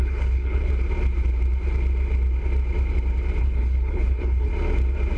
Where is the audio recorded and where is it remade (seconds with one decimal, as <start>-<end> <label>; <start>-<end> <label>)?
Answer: 0.0-0.7 remade; 0.7-3.4 recorded; 3.4-4.5 remade; 4.5-5.2 recorded